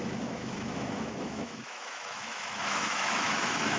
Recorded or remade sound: remade